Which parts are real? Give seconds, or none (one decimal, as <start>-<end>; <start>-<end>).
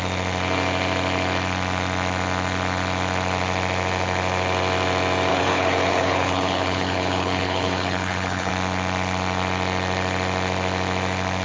0.0-5.3; 8.5-11.4